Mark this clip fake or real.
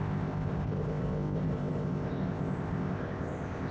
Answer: fake